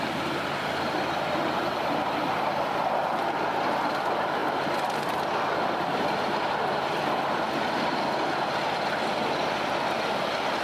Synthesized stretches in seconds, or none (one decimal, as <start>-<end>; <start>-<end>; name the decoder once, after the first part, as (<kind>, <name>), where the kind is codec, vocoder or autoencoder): none